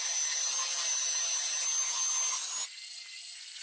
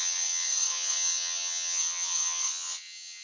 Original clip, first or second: first